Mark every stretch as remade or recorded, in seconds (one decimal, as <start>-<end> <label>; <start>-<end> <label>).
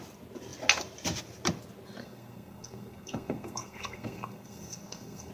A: 0.0-2.0 recorded; 2.0-5.3 remade